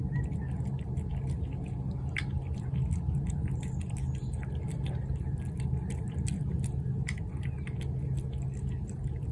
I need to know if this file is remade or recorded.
recorded